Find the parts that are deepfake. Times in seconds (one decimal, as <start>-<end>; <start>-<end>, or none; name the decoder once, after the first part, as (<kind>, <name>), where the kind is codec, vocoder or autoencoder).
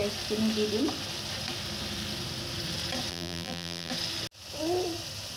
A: 3.1-3.9 (vocoder, BigVGAN v2)